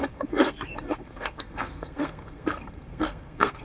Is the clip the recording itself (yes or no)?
no